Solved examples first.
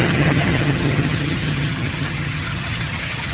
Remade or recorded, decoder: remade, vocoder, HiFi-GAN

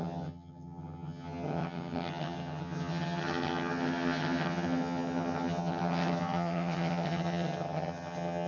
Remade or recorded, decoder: remade, vocoder, HiFi-GAN